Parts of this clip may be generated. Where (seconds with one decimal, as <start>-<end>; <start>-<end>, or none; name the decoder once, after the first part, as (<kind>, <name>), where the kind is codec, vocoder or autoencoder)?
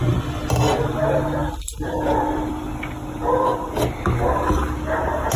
1.4-2.5 (vocoder, BigVGAN v2)